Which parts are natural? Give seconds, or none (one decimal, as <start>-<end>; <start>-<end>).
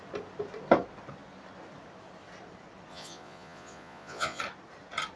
0.0-2.9; 4.4-5.2